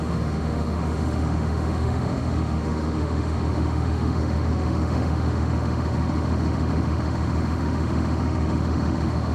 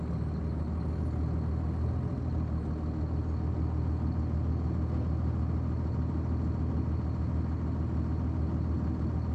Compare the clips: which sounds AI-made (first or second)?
first